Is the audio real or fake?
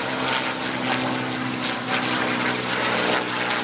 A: real